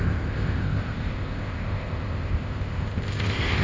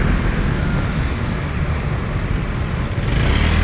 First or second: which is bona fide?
second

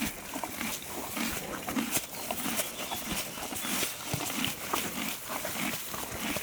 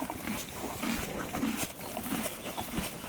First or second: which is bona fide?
first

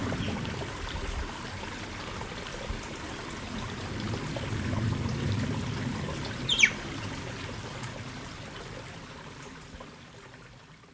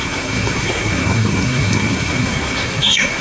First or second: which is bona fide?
first